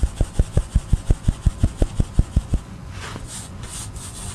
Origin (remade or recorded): remade